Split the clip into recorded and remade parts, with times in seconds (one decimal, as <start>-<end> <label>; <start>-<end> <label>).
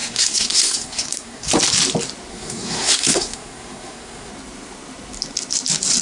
0.0-1.5 remade; 1.5-2.3 recorded; 2.3-4.3 remade; 4.3-6.0 recorded